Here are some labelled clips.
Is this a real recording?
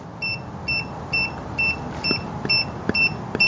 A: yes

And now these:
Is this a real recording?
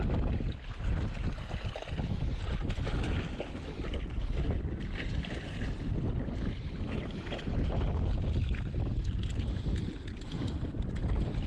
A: yes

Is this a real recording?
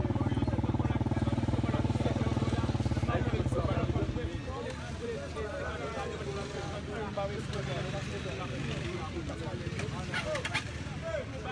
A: yes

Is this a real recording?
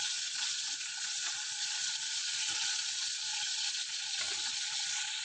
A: no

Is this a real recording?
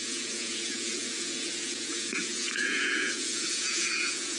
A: no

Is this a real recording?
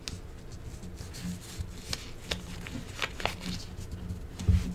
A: yes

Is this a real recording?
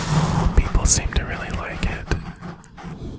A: yes